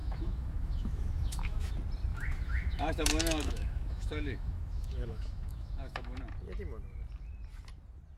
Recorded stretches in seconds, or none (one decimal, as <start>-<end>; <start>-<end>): 1.7-2.1; 6.2-8.2